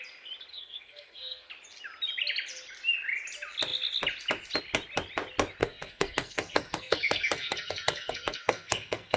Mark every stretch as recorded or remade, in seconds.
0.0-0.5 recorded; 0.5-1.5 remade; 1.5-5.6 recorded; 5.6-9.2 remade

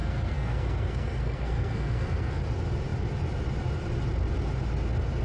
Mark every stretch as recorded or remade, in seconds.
0.0-2.4 remade; 2.4-5.2 recorded